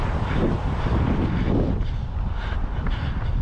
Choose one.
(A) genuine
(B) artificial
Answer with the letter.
A